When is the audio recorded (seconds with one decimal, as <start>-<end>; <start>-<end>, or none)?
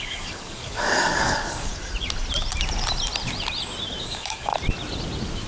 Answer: 1.7-4.0; 4.5-5.5